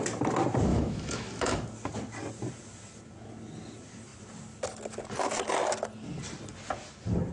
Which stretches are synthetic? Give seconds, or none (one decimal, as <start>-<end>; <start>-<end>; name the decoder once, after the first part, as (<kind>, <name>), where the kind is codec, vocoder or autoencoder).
0.7-1.6 (autoencoder, DAC-VAE)